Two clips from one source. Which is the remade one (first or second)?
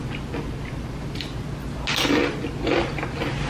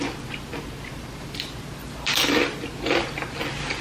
second